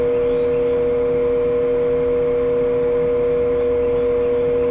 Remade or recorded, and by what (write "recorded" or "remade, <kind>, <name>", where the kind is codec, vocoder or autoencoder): recorded